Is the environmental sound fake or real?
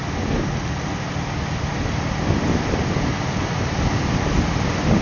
real